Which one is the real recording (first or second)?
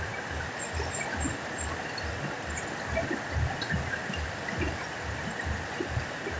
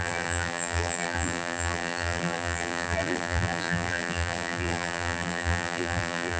first